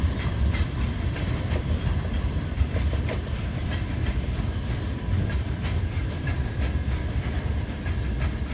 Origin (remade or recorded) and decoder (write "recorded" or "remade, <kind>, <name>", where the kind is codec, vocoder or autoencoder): remade, vocoder, BigVGAN v2